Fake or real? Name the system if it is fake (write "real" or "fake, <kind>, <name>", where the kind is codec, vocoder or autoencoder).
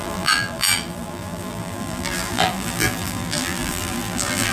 fake, vocoder, BigVGAN v2